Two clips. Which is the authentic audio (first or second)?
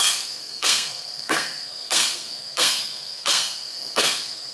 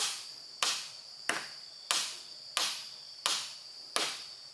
second